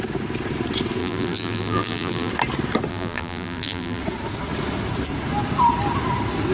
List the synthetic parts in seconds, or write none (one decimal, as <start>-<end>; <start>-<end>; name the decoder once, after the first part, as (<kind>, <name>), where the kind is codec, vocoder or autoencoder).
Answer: 1.0-2.3 (vocoder, BigVGAN v2); 2.9-4.0